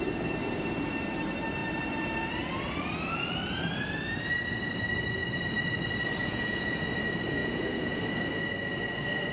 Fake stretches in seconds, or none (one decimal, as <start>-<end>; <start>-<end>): 6.2-6.8; 7.4-8.0